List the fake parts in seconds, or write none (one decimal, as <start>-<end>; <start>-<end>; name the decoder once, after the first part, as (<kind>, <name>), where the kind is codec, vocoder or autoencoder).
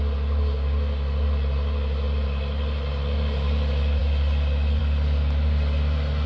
none